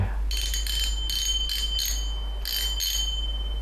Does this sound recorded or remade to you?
recorded